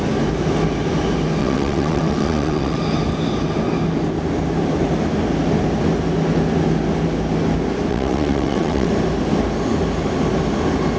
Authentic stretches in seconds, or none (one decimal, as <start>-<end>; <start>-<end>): 0.0-1.4; 2.8-7.9; 8.9-11.0